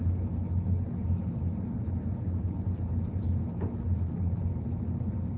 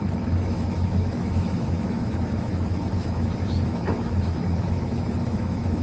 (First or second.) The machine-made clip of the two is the second